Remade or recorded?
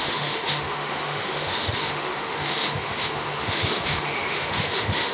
remade